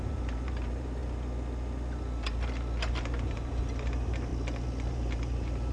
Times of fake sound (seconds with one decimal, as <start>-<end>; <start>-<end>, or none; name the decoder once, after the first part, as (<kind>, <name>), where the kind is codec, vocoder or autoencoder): 0.0-1.0 (vocoder, BigVGAN v2); 3.2-4.3; 4.9-5.7